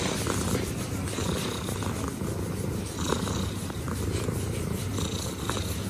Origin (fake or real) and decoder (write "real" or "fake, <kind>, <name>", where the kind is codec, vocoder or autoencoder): real